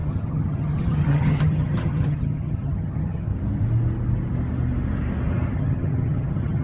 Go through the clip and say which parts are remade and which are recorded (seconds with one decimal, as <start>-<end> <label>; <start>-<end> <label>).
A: 0.0-3.3 remade; 3.3-5.5 recorded; 5.5-6.6 remade